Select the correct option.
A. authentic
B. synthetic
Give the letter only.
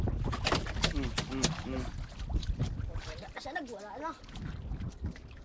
A